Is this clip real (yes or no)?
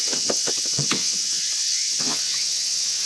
no